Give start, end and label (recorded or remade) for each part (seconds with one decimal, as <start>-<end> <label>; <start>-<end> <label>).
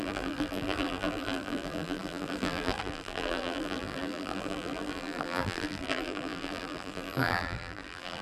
0.0-8.2 remade